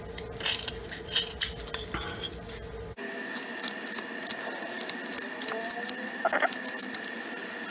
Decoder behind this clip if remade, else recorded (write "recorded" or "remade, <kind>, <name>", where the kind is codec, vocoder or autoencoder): recorded